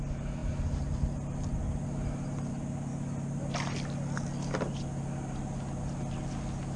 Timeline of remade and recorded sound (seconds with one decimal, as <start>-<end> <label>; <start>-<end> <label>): 0.0-6.8 recorded